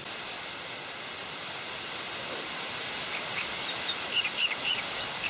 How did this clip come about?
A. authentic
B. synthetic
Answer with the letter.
A